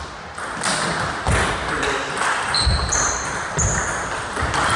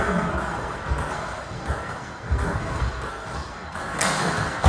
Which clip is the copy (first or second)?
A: second